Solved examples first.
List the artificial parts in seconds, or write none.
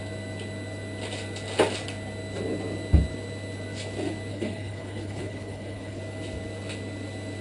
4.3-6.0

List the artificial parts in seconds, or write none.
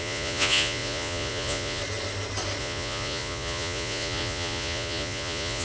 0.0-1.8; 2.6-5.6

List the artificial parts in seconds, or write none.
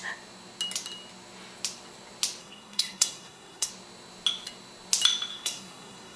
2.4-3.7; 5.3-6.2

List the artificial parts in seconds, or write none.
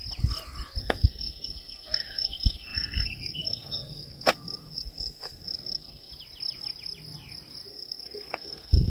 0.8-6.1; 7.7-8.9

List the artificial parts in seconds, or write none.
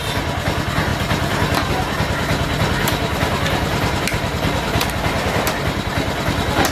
none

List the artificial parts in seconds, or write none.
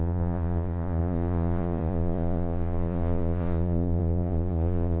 0.0-5.0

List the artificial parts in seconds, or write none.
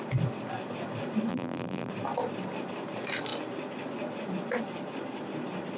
1.3-1.9